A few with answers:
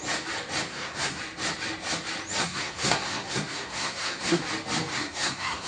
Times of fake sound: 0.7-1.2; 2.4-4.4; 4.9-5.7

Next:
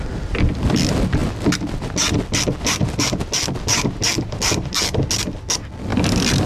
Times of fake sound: none

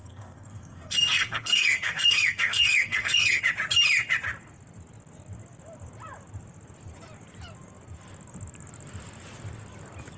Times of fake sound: 0.0-3.4

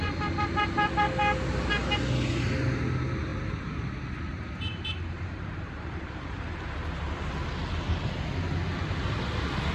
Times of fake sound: 3.3-3.9; 4.3-7.3

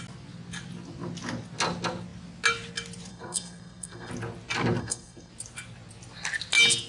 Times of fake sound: 3.1-4.1; 4.8-5.3

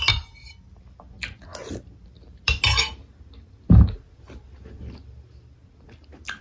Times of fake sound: none

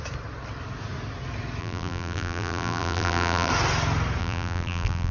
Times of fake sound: 1.6-3.5; 4.2-5.1